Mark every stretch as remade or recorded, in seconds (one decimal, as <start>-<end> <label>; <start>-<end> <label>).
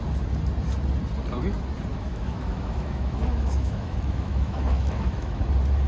0.0-1.9 recorded; 1.9-5.4 remade; 5.4-5.9 recorded